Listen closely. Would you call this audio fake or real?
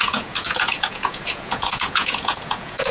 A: fake